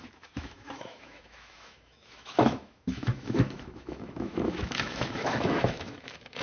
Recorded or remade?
remade